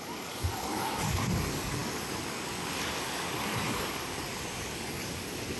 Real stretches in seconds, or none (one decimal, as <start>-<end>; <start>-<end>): none